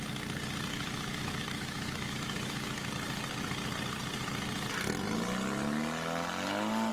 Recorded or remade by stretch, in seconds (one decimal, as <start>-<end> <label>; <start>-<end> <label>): 0.0-0.7 recorded; 0.7-2.9 remade; 2.9-6.9 recorded